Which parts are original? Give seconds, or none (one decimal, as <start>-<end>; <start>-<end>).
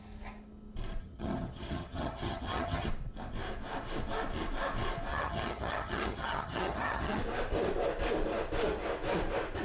0.0-1.0; 2.9-5.1; 7.2-9.6